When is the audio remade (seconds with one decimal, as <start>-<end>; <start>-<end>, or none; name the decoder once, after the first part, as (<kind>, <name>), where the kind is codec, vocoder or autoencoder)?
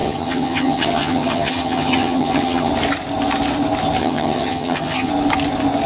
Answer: 0.0-2.7 (vocoder, HiFi-GAN); 4.0-5.1